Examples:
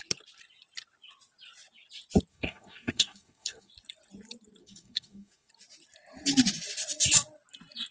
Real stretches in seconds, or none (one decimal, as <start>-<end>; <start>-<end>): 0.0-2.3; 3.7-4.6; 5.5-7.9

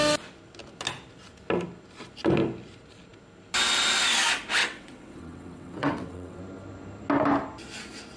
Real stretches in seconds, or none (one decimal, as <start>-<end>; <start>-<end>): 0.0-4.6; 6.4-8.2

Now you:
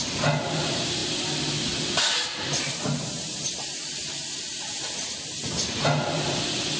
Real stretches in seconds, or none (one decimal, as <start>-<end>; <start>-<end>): 0.0-6.8

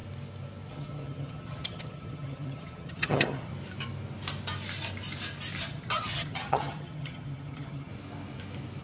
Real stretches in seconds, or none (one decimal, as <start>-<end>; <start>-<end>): 0.0-0.7; 3.5-5.6; 7.9-8.8

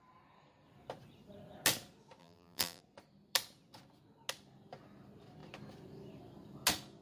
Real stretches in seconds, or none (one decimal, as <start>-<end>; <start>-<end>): 0.0-2.2; 2.8-7.0

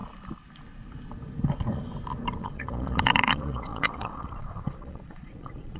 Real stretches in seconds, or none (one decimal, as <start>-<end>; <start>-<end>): 0.0-2.4